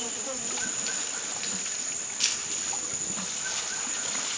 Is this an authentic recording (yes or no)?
yes